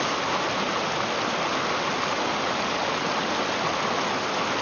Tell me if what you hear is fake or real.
real